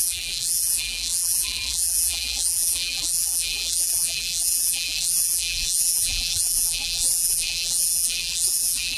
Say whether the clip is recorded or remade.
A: remade